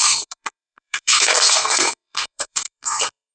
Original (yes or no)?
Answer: no